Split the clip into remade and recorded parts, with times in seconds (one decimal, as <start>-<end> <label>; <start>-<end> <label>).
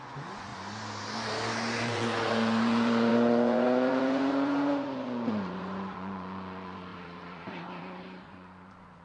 0.0-0.5 remade; 0.5-1.8 recorded; 1.8-9.0 remade